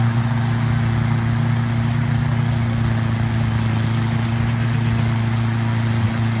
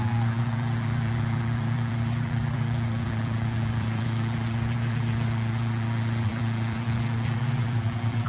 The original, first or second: first